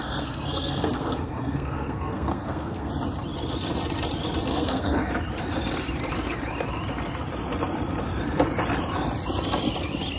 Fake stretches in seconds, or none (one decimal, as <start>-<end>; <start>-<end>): 0.0-2.9; 4.5-5.1